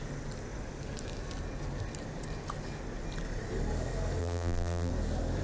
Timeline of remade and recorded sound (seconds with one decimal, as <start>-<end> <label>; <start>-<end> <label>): 0.0-4.2 recorded; 4.2-4.9 remade; 4.9-5.4 recorded